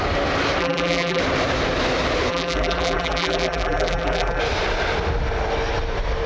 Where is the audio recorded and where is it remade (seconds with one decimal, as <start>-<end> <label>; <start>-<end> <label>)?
0.0-0.6 recorded; 0.6-1.2 remade; 1.2-2.3 recorded; 2.3-4.4 remade; 4.4-6.3 recorded